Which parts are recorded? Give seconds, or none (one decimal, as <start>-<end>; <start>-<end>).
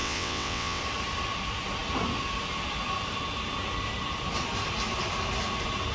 0.8-5.9